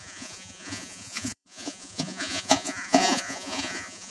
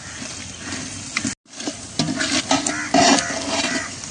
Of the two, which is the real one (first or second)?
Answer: second